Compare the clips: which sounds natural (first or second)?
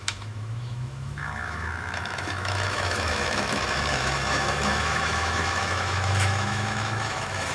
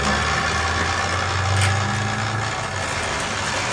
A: second